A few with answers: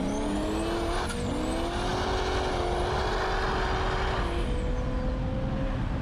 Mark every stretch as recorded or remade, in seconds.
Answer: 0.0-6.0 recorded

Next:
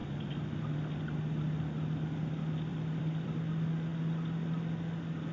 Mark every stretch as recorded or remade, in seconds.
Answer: 0.0-2.7 recorded; 2.7-3.3 remade; 3.3-5.3 recorded